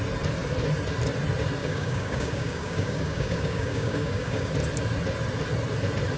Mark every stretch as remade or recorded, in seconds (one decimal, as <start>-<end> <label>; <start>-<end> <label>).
0.0-1.6 recorded; 1.6-4.5 remade; 4.5-6.2 recorded